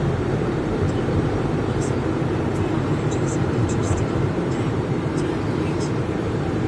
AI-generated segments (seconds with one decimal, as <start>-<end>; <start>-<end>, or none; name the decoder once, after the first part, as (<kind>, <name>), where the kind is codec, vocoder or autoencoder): 0.0-6.7 (vocoder, BigVGAN v2)